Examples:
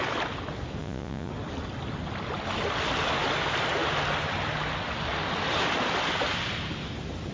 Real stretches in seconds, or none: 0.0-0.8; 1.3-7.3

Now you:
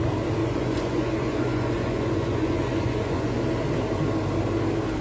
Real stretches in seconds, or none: 0.0-0.4; 3.4-5.0

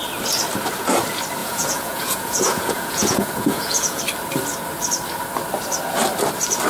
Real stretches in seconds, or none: 0.0-1.4; 4.0-6.7

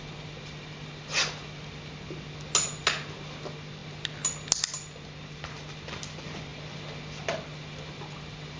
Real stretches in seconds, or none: 0.0-8.6

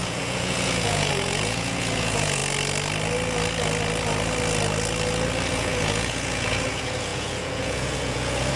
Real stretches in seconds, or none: 2.4-5.5

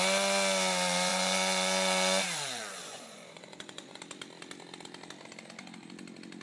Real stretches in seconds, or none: 0.0-1.1; 4.0-6.4